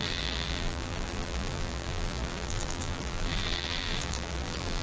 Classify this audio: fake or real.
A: fake